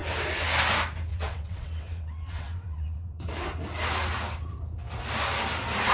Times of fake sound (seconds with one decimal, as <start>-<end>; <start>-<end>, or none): 1.1-3.3